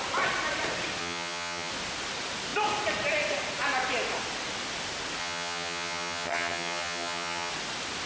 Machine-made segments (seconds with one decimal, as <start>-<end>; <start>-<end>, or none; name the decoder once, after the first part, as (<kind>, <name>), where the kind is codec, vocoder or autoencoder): 1.0-1.7 (vocoder, HiFi-GAN); 5.2-7.5